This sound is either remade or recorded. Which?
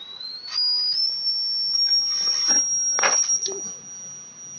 recorded